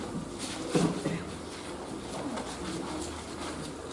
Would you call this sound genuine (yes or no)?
yes